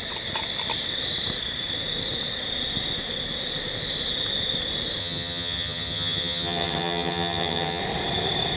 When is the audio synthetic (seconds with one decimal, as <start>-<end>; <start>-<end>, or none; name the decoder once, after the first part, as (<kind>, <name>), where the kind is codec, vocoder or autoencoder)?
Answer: 5.0-7.8 (vocoder, HiFi-GAN)